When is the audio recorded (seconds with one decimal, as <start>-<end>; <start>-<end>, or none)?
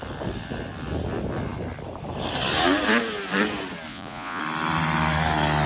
0.0-3.9; 4.4-5.7